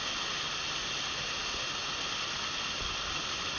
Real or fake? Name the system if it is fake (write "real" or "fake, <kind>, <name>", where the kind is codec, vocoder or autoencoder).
real